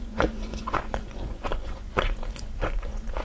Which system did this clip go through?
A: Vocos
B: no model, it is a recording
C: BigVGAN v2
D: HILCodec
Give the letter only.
A